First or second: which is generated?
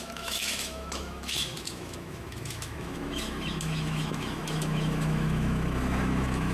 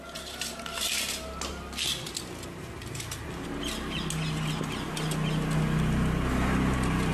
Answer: first